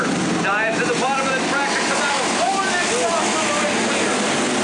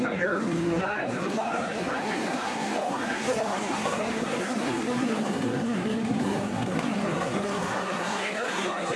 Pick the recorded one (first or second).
first